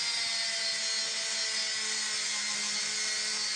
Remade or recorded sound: recorded